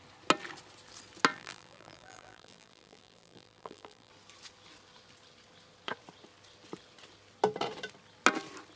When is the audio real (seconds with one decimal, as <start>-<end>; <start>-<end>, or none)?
0.0-1.3; 4.1-8.8